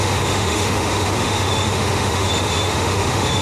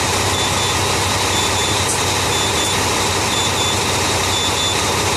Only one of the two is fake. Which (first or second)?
first